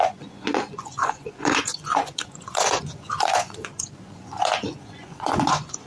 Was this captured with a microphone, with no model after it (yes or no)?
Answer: no